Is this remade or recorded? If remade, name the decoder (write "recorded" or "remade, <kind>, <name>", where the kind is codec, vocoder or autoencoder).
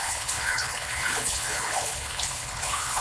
remade, codec, HILCodec